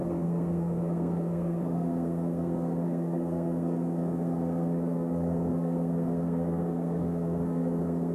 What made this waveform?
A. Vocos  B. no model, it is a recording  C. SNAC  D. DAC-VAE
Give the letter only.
C